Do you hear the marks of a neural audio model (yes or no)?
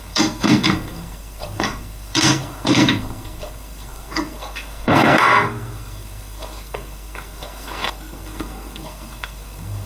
yes